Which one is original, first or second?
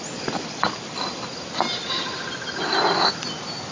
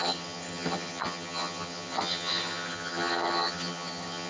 first